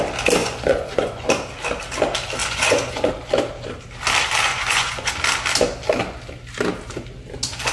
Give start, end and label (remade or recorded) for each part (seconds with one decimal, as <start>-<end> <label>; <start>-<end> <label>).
0.0-0.4 recorded; 0.4-1.3 remade; 1.3-2.4 recorded; 2.4-3.1 remade; 3.1-4.5 recorded; 4.5-5.1 remade; 5.1-7.7 recorded